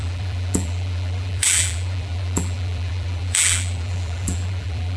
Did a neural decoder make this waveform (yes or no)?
yes